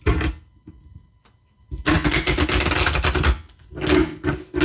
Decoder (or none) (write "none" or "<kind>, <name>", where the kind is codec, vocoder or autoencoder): none